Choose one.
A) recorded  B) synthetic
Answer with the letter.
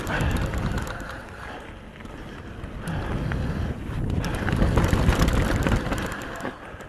A